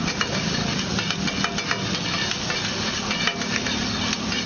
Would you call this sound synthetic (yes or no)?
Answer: no